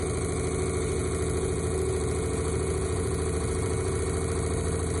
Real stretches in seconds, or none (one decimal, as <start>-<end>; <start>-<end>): 0.0-1.0; 4.0-5.0